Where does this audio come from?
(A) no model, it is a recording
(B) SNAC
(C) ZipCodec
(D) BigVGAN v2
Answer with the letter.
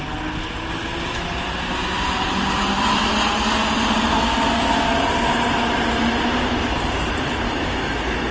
A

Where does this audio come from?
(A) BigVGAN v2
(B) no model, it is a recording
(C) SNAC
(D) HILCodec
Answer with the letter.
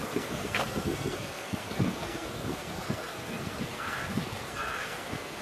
C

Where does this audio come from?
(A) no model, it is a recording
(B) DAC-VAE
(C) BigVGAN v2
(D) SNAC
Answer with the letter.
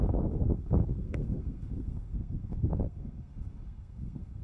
D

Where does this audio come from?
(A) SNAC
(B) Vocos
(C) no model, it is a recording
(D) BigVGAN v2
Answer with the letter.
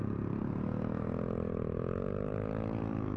C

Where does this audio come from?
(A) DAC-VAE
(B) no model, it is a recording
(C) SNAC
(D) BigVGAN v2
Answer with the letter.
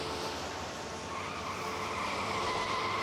B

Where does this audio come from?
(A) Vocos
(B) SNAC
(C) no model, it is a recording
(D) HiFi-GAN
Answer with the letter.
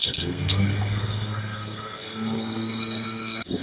B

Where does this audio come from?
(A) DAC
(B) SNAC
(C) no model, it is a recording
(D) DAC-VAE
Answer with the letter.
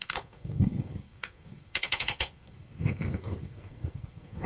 B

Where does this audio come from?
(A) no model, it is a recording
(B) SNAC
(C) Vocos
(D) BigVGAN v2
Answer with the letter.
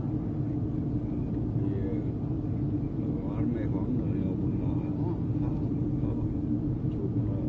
A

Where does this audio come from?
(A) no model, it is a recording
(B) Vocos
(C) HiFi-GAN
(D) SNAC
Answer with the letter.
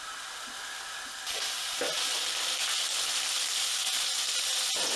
A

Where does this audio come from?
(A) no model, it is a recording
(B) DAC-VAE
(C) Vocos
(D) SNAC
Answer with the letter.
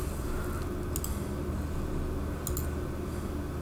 A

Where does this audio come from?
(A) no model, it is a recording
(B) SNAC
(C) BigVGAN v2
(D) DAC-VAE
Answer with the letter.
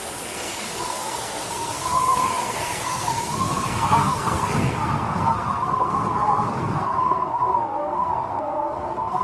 B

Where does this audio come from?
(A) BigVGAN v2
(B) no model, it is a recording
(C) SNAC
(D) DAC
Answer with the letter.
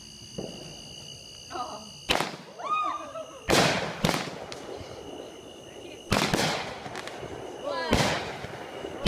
B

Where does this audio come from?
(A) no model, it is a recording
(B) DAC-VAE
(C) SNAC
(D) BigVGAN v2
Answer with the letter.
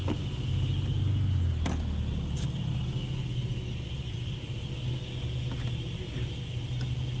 A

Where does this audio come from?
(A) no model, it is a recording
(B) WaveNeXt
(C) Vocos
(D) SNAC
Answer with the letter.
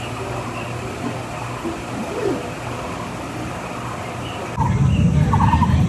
A